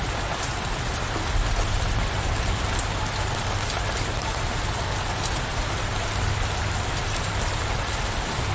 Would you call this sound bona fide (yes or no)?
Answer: yes